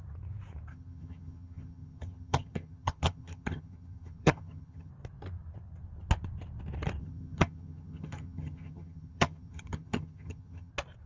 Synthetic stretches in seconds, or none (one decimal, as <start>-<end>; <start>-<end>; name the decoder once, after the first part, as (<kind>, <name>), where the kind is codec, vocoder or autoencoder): 0.7-4.9 (vocoder, HiFi-GAN); 7.0-10.7